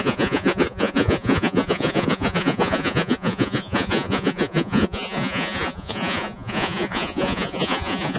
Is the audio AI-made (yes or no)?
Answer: yes